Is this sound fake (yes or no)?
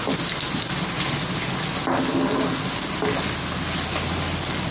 no